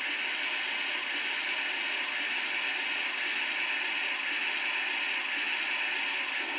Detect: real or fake real